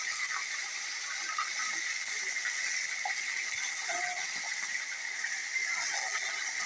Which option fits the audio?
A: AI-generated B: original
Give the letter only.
B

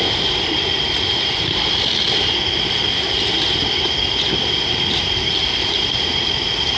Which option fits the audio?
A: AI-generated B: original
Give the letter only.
B